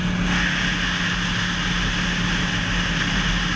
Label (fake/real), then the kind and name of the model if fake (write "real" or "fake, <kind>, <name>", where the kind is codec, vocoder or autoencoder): real